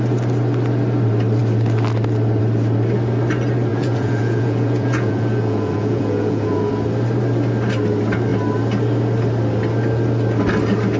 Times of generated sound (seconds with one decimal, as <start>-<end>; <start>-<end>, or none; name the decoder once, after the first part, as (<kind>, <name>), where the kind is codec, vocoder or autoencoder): 3.7-6.7 (vocoder, Vocos)